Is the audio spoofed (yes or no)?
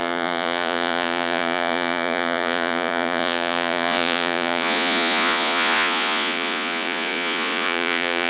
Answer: yes